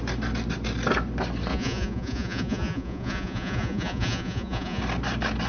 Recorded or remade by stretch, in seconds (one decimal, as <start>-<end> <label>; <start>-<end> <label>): 0.0-1.5 recorded; 1.5-4.8 remade; 4.8-5.5 recorded